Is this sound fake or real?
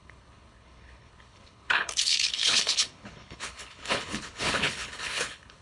fake